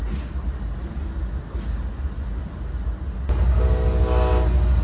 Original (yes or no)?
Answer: yes